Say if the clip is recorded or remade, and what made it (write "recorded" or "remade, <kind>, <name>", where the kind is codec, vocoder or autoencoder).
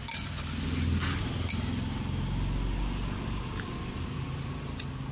recorded